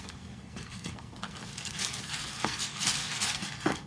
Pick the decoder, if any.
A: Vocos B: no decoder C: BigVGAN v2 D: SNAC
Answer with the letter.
D